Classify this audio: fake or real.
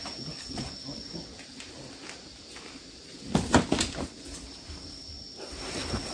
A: real